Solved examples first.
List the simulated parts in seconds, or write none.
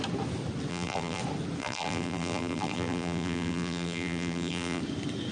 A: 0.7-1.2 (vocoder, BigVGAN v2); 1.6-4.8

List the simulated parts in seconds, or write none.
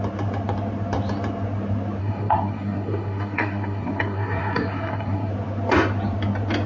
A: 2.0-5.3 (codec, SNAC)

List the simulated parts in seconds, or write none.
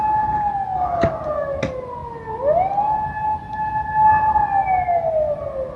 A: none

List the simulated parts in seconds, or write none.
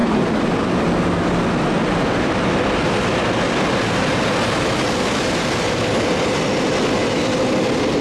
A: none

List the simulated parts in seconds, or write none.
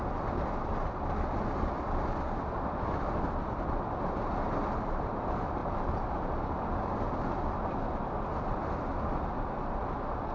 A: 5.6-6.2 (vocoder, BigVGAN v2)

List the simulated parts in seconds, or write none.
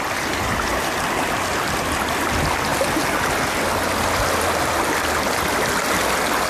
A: none